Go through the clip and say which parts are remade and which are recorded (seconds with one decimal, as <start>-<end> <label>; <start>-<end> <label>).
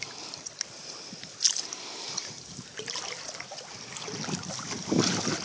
0.0-5.4 recorded